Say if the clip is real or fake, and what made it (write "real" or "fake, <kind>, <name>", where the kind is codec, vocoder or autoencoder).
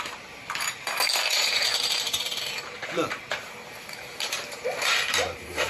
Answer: fake, vocoder, BigVGAN v2